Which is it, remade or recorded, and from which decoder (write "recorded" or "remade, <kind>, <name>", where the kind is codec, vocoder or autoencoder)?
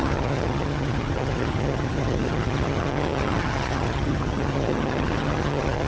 remade, vocoder, HiFi-GAN